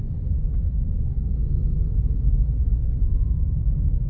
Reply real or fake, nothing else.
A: real